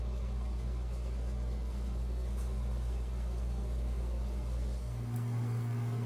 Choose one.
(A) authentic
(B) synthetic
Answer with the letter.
B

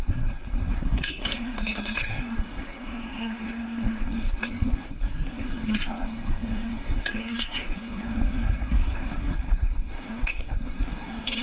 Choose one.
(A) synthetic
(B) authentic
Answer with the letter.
A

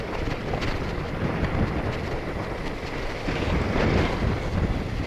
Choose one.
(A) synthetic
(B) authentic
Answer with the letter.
B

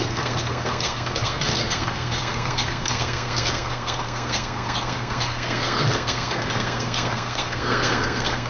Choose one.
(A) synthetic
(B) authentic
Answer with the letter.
A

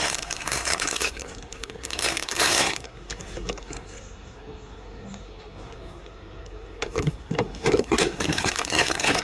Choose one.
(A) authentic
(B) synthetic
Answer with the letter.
B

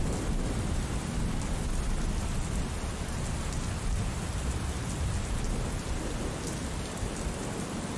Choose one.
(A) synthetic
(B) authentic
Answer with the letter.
B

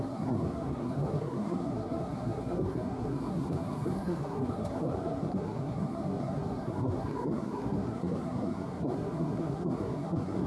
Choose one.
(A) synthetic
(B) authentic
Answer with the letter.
A